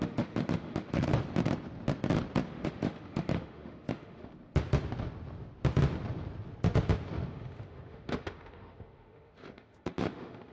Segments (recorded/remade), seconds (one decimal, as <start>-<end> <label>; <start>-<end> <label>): 0.0-1.1 remade; 1.1-2.5 recorded; 2.5-4.3 remade; 4.3-7.3 recorded; 7.3-10.5 remade